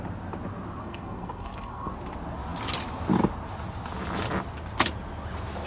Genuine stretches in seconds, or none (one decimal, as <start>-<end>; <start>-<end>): 0.0-0.8; 1.9-5.7